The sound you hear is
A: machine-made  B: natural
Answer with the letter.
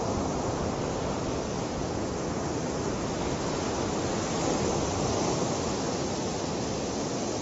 B